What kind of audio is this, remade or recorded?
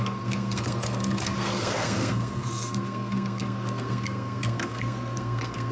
remade